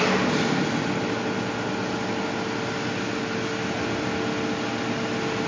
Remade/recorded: recorded